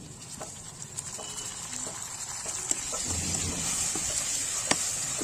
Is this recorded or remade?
recorded